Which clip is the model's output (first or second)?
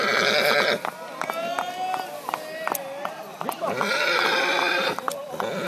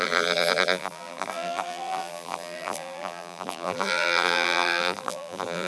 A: second